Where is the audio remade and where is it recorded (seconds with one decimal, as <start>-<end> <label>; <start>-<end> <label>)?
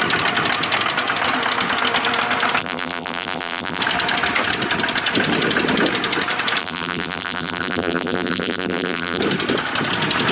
0.0-2.6 recorded; 2.6-3.8 remade; 3.8-6.6 recorded; 6.6-9.2 remade; 9.2-10.3 recorded